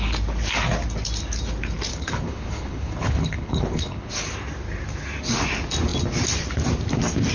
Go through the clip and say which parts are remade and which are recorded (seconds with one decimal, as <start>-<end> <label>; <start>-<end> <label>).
0.0-1.9 recorded; 1.9-4.1 remade; 4.1-7.3 recorded

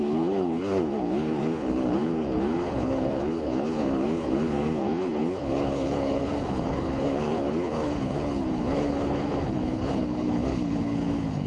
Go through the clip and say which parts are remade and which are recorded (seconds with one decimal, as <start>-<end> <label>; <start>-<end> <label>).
0.0-11.5 remade